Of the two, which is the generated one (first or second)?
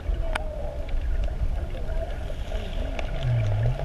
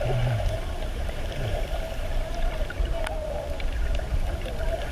second